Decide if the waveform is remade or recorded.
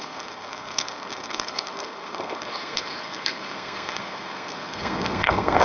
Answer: remade